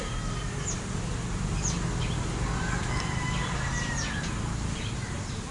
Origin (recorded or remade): recorded